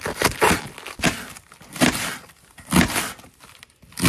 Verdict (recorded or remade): recorded